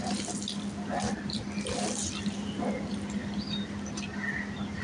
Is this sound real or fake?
fake